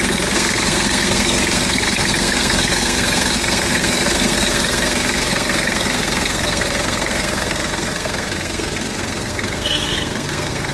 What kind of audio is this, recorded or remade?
remade